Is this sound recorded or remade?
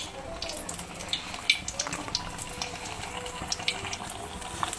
recorded